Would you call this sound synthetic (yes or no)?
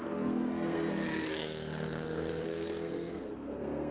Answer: yes